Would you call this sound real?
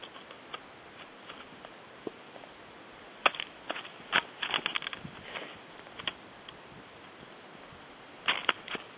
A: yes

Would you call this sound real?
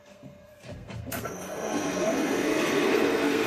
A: no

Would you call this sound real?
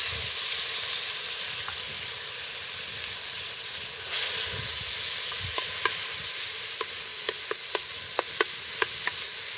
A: yes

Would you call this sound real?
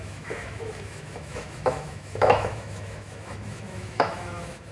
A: no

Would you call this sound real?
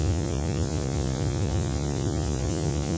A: no